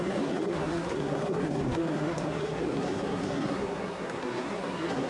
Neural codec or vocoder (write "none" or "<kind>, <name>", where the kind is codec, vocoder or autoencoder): codec, SNAC